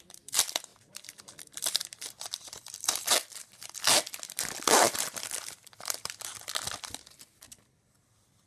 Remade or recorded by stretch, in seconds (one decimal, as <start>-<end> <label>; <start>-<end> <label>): 0.0-8.5 remade